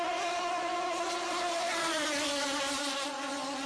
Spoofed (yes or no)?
yes